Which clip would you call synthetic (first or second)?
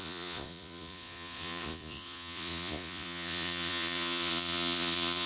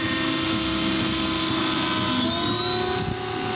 first